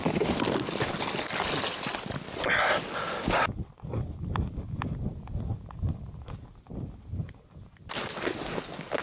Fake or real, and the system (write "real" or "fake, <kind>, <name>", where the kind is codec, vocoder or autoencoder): real